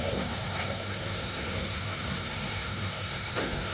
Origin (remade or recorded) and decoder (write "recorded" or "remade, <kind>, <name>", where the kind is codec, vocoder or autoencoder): remade, codec, SNAC